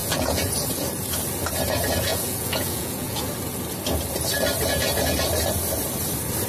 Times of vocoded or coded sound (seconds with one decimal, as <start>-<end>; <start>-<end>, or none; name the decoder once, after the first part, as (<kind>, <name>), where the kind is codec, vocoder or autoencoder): 0.0-0.5 (vocoder, Vocos); 2.1-3.3